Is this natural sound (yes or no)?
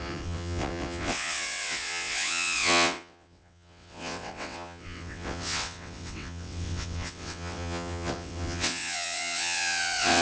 no